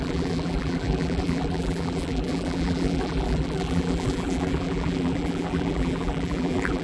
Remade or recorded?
remade